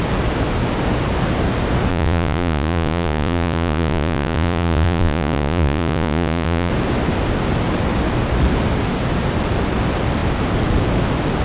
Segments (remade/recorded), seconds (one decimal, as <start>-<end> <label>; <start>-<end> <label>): 0.0-1.9 recorded; 1.9-6.7 remade; 6.7-11.4 recorded